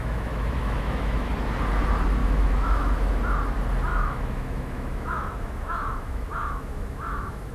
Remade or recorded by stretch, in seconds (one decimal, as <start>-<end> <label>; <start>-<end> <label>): 0.0-1.3 remade; 1.3-2.2 recorded; 2.2-3.2 remade; 3.2-3.9 recorded; 3.9-7.5 remade

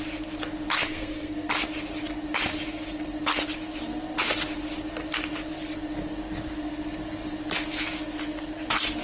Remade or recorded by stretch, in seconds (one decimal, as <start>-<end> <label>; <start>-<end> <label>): 0.0-0.8 recorded; 0.8-1.5 remade; 1.5-9.0 recorded

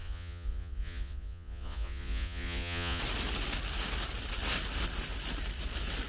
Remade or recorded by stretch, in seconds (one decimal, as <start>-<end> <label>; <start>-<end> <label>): 0.0-3.0 remade; 3.0-6.1 recorded

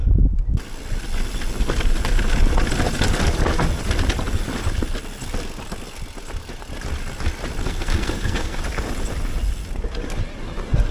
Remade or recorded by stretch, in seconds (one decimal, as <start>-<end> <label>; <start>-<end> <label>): 0.0-7.6 recorded; 7.6-8.6 remade; 8.6-10.9 recorded